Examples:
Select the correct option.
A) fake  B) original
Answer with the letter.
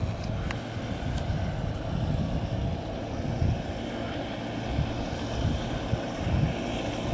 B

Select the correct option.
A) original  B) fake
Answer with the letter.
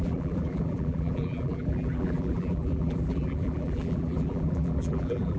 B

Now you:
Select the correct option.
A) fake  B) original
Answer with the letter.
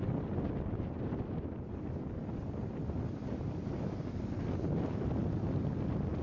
B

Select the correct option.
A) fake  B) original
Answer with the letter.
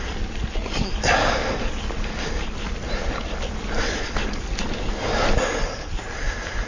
B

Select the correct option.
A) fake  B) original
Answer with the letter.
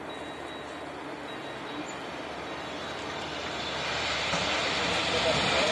B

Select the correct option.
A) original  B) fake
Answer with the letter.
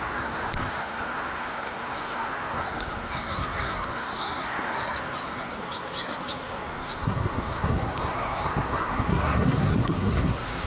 B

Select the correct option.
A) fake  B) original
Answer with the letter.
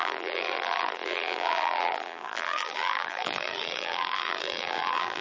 A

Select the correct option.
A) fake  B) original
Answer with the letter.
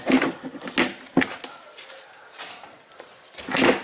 B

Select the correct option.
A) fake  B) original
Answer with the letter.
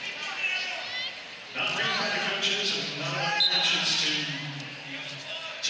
B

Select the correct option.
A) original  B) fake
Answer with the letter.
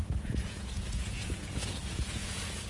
B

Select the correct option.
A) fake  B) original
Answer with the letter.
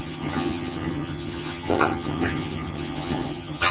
A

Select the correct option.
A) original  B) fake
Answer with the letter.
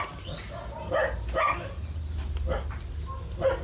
A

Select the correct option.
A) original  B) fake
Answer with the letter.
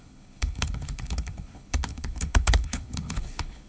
B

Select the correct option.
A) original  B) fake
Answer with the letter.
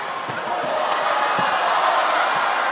A